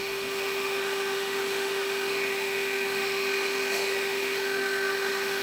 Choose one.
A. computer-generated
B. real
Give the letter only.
A